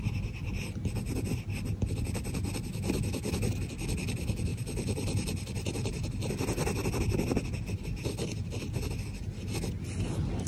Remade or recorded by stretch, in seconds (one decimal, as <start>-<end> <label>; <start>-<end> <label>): 0.0-4.5 recorded; 4.5-6.3 remade; 6.3-10.5 recorded